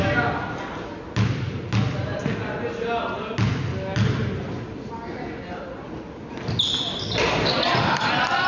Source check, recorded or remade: recorded